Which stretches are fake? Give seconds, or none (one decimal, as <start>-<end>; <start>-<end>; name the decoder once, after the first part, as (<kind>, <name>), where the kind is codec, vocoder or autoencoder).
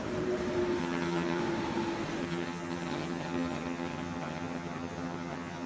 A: 0.8-1.4 (vocoder, HiFi-GAN); 2.2-5.7